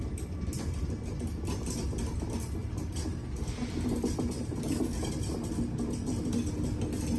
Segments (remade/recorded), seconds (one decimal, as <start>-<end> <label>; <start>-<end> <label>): 0.0-7.2 recorded